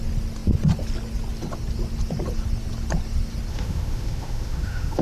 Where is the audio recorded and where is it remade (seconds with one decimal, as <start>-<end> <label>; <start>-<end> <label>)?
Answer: 0.0-3.5 recorded; 3.5-5.0 remade